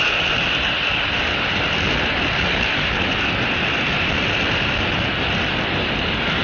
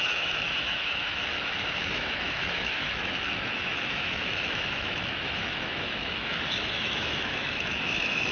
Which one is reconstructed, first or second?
second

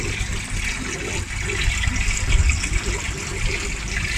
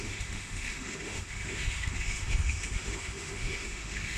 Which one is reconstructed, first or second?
second